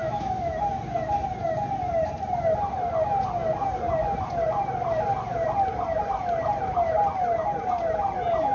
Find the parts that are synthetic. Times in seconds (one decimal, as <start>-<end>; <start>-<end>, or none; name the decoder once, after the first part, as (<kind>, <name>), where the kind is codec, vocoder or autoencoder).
0.0-0.6 (autoencoder, DAC-VAE)